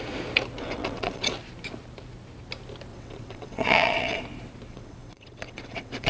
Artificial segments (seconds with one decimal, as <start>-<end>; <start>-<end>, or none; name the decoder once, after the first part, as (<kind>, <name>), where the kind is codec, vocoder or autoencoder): 0.6-1.3 (vocoder, WaveNeXt); 2.9-4.2; 4.7-6.1